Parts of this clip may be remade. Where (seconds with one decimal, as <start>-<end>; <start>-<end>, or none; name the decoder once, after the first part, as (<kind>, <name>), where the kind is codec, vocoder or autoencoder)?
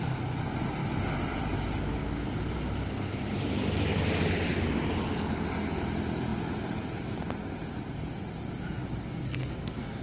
9.1-10.0 (codec, SNAC)